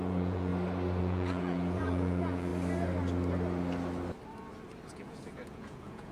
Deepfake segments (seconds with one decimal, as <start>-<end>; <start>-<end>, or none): 0.0-0.5; 1.0-2.5; 4.9-6.1